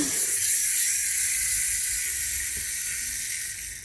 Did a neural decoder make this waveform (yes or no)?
no